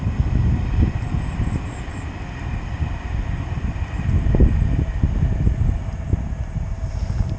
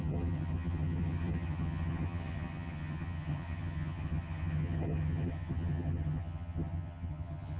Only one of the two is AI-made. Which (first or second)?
second